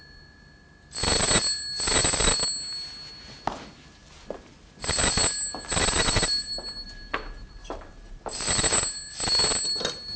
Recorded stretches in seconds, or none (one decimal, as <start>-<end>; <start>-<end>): 0.0-7.6; 8.2-10.2